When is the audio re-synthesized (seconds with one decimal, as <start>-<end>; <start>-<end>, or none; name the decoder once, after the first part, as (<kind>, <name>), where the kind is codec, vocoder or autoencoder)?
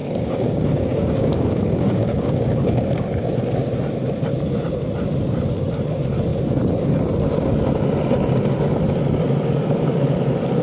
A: 0.0-2.8 (codec, DAC)